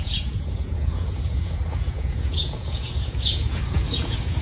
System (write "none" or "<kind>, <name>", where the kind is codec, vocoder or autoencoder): vocoder, Vocos